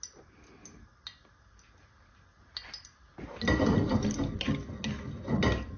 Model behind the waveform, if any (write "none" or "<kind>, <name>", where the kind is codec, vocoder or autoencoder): none